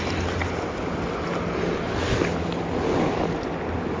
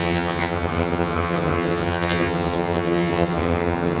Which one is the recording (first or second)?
first